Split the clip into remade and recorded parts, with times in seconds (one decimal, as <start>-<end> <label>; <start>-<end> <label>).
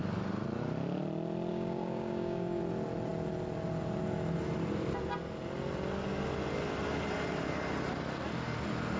0.0-1.5 recorded; 1.5-2.6 remade; 2.6-9.0 recorded